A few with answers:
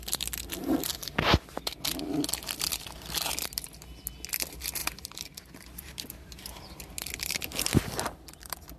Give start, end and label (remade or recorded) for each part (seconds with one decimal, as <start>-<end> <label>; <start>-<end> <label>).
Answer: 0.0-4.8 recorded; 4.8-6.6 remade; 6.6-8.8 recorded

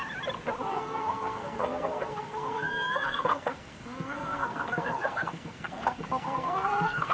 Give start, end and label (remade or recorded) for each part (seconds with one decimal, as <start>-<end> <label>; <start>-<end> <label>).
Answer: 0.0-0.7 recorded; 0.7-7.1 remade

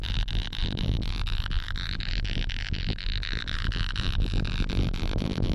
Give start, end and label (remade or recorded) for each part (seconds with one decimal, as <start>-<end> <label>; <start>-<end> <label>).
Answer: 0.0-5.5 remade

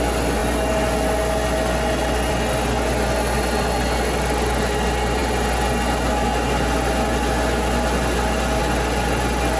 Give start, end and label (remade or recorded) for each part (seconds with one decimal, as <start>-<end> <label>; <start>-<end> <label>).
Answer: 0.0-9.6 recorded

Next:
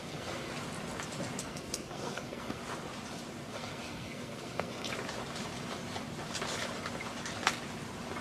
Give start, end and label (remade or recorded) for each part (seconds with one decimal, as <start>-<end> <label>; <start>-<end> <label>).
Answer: 0.0-0.5 remade; 0.5-1.4 recorded; 1.4-2.6 remade; 2.6-3.5 recorded; 3.5-4.9 remade; 4.9-8.2 recorded

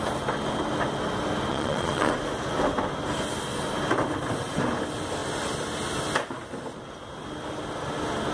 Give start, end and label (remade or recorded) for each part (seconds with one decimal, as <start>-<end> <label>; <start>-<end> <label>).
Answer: 0.0-1.5 recorded; 1.5-2.1 remade; 2.1-8.3 recorded